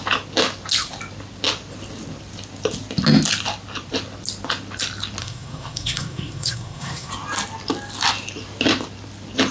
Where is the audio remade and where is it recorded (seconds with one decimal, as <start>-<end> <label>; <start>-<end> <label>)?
0.0-5.2 recorded; 5.2-7.1 remade; 7.1-9.5 recorded